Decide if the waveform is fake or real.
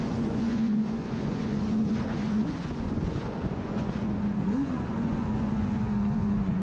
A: fake